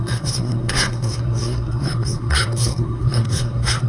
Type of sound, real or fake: fake